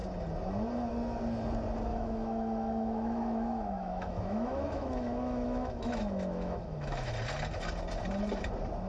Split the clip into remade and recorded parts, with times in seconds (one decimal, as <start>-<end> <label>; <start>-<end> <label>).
0.0-1.9 recorded; 1.9-7.1 remade; 7.1-8.9 recorded